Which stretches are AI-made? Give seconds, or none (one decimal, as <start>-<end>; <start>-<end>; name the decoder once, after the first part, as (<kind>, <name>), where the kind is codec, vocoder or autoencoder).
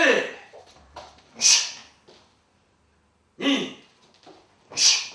0.0-1.8 (vocoder, BigVGAN v2)